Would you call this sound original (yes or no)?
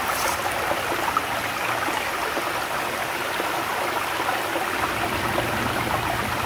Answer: yes